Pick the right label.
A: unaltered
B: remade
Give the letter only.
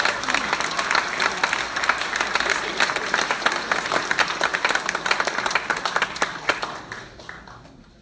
A